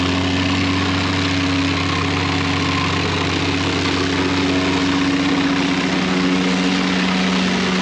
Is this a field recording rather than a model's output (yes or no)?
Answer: yes